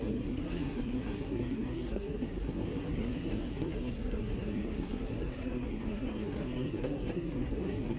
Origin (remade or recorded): remade